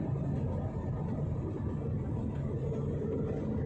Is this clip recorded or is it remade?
recorded